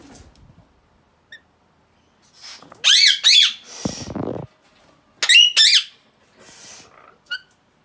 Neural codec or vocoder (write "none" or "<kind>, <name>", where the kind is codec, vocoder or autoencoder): none